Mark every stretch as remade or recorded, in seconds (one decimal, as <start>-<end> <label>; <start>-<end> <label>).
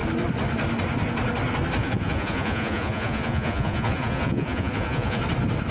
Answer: 0.0-1.8 recorded; 1.8-5.2 remade; 5.2-5.7 recorded